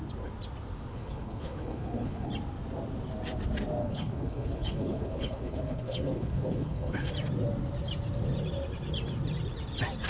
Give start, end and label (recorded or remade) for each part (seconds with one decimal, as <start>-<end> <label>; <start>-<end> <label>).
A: 0.0-0.9 recorded; 0.9-2.3 remade; 2.3-3.8 recorded; 3.8-7.1 remade; 7.1-10.1 recorded